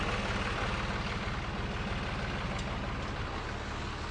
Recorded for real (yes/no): yes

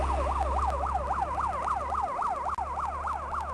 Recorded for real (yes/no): yes